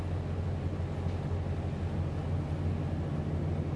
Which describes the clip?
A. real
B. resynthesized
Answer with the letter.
A